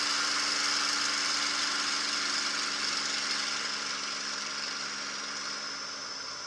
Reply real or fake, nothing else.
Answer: real